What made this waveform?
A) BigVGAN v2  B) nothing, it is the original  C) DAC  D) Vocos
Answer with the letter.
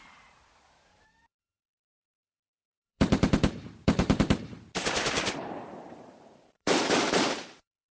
A